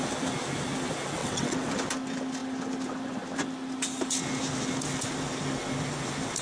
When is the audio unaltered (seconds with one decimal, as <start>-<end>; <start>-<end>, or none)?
0.0-1.2; 1.7-6.4